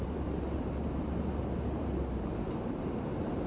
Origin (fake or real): fake